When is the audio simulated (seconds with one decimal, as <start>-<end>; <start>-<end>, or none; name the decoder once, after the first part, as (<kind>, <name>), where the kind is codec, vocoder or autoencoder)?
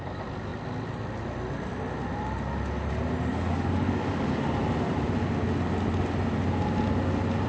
3.3-4.4 (codec, DAC)